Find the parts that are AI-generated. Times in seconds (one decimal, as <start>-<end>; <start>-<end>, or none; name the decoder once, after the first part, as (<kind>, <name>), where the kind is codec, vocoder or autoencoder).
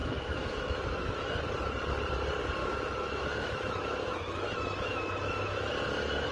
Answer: 0.0-1.4 (autoencoder, DAC-VAE); 2.6-5.7